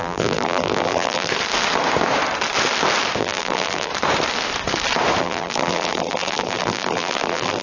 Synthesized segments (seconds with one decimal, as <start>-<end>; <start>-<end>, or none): 0.0-1.3; 3.2-3.9; 5.2-7.6